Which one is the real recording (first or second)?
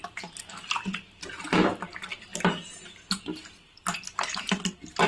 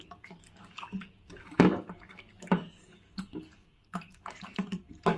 first